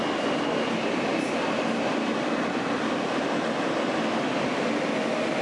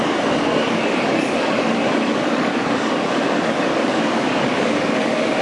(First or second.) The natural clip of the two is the first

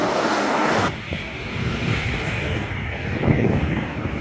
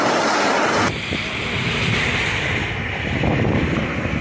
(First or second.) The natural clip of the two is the second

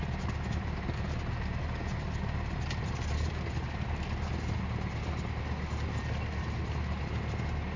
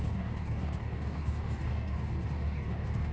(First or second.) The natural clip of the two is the first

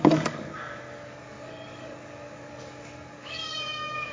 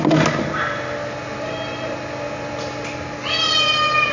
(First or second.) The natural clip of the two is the second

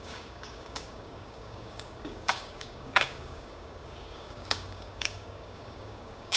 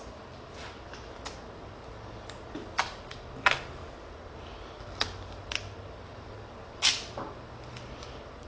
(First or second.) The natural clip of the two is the second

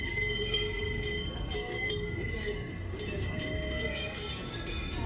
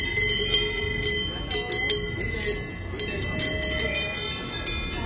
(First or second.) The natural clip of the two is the second